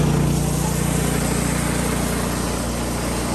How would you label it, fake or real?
real